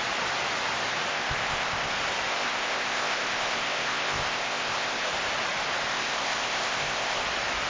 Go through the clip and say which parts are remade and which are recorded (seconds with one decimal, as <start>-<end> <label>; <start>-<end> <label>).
0.0-1.1 recorded; 1.1-1.9 remade; 1.9-2.3 recorded; 2.3-5.1 remade; 5.1-5.9 recorded; 5.9-7.2 remade; 7.2-7.7 recorded